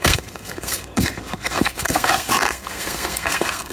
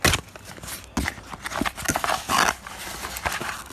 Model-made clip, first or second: first